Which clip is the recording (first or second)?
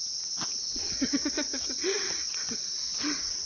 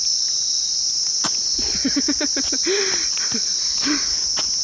second